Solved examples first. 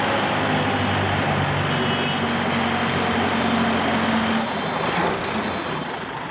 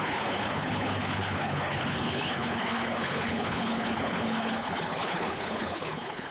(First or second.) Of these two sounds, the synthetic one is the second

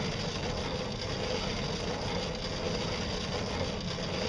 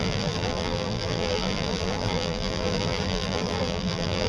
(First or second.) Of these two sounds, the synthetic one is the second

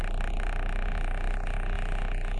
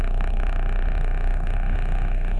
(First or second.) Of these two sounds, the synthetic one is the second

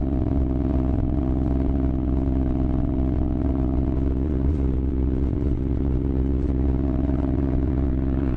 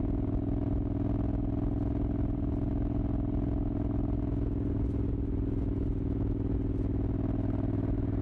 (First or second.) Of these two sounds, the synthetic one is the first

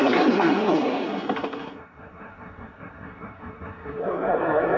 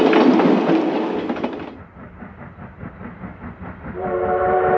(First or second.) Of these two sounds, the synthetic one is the first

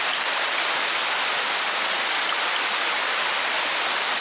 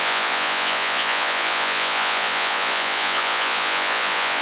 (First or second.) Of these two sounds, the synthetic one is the second